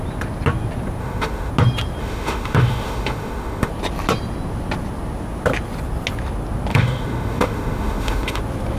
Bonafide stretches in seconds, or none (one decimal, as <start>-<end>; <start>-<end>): 0.0-1.0; 1.5-2.0; 3.7-6.7; 8.4-8.8